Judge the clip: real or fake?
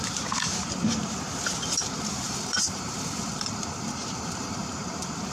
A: fake